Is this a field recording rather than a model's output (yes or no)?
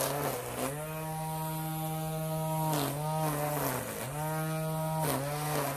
yes